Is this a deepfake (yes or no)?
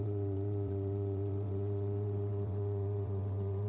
yes